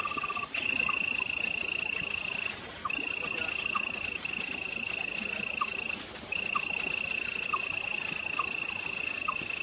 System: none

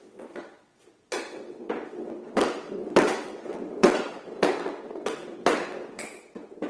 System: vocoder, WaveNeXt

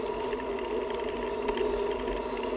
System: none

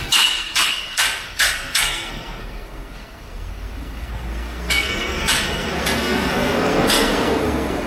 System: codec, SNAC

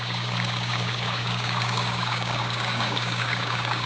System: codec, DAC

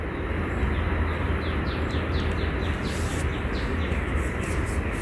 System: none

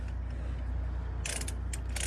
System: none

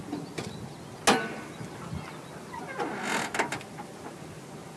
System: none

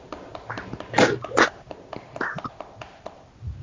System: none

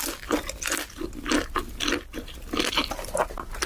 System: none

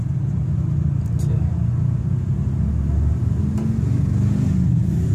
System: none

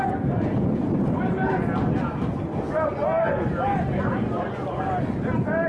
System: none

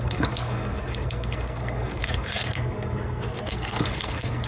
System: codec, SNAC